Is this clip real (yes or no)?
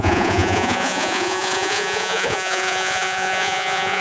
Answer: no